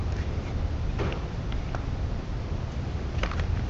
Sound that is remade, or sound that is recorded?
remade